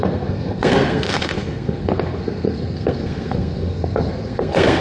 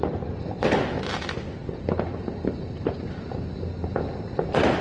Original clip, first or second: second